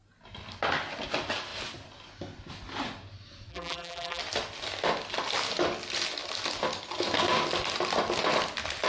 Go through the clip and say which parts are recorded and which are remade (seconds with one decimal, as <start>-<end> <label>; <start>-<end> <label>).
0.0-3.5 recorded; 3.5-4.2 remade; 4.2-8.9 recorded